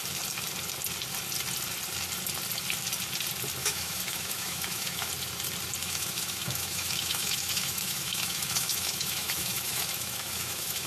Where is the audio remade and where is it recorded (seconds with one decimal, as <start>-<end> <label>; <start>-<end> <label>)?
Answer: 0.0-3.6 recorded; 3.6-5.1 remade; 5.1-5.8 recorded; 5.8-10.9 remade

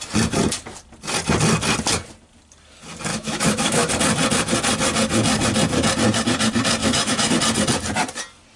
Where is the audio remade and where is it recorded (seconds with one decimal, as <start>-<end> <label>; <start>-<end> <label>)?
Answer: 0.0-3.1 recorded; 3.1-3.9 remade; 3.9-6.8 recorded; 6.8-7.3 remade; 7.3-8.6 recorded

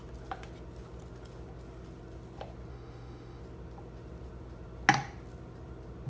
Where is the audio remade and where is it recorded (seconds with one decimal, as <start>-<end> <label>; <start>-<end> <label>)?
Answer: 0.0-2.7 recorded; 2.7-3.4 remade; 3.4-6.1 recorded

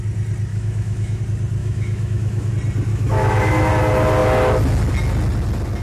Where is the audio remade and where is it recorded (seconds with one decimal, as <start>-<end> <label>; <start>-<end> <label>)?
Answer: 0.0-0.5 recorded; 0.5-1.2 remade; 1.2-1.6 recorded; 1.6-2.5 remade; 2.5-2.9 recorded; 2.9-3.7 remade; 3.7-5.8 recorded